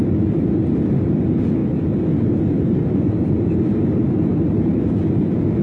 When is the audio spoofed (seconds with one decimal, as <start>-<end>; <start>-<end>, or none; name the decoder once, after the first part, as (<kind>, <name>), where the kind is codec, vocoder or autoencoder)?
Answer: none